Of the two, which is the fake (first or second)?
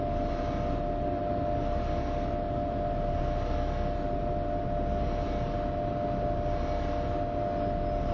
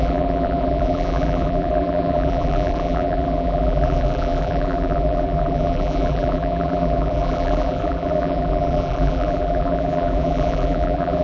second